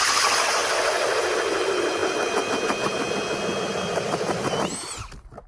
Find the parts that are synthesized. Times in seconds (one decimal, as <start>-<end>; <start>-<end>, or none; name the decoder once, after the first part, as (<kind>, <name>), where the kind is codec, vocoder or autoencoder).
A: none